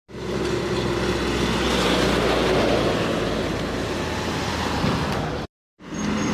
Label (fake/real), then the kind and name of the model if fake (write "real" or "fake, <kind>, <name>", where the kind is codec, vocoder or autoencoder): real